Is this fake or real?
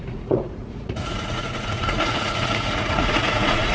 fake